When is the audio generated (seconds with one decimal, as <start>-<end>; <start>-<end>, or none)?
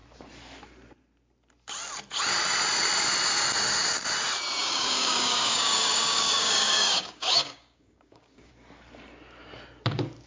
4.6-8.5